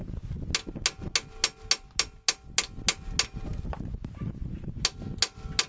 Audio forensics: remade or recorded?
recorded